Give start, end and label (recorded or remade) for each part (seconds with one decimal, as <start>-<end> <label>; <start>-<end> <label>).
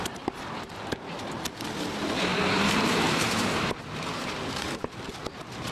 0.0-2.3 recorded; 2.3-4.8 remade; 4.8-5.7 recorded